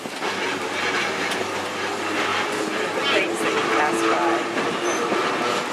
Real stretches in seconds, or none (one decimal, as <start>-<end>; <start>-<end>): 0.0-5.7